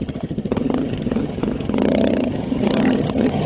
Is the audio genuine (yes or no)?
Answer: no